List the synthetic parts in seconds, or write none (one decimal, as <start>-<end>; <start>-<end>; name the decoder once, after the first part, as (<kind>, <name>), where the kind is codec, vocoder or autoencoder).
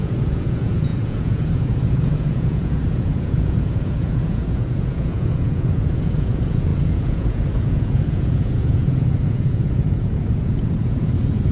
0.0-11.5 (vocoder, Vocos)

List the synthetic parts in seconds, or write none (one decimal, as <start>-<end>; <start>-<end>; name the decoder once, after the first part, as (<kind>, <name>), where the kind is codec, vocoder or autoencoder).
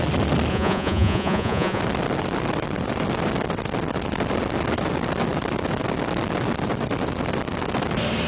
0.5-1.8 (vocoder, Vocos)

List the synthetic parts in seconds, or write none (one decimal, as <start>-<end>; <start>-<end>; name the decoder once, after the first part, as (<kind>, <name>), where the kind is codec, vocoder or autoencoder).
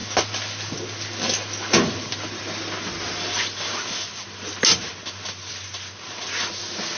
none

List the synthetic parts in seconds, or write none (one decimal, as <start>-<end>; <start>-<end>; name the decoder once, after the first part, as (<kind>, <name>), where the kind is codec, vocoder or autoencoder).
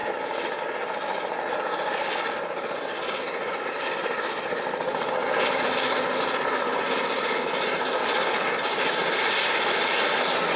none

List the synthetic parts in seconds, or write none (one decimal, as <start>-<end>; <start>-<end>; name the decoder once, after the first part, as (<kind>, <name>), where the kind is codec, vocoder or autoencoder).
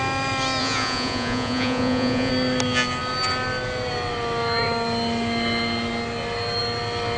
0.6-2.3 (vocoder, Vocos)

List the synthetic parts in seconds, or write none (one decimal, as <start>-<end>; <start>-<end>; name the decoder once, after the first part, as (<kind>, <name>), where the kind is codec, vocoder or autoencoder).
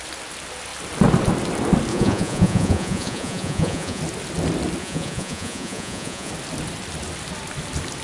1.9-4.0 (vocoder, Vocos); 4.8-6.3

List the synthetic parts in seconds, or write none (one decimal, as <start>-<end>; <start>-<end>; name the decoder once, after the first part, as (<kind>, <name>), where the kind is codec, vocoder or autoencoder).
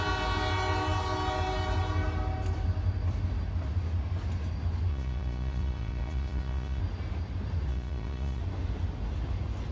4.9-6.8 (vocoder, Vocos); 7.7-8.4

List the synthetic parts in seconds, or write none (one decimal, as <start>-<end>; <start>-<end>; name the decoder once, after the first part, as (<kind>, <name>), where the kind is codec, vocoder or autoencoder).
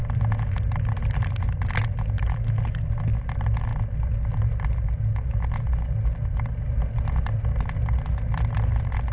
none